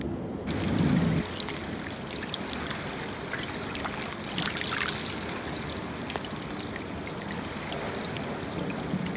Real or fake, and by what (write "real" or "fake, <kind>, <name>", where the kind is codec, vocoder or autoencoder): real